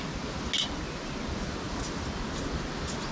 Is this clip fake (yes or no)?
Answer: no